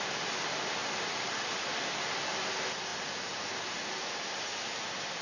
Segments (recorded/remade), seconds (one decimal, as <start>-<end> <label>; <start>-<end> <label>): 0.0-0.8 recorded; 0.8-1.4 remade; 1.4-2.9 recorded; 2.9-4.2 remade; 4.2-5.2 recorded